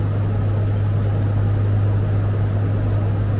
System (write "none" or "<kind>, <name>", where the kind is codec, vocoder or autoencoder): none